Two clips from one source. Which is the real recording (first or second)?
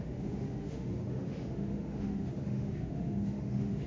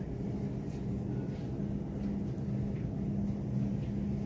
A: second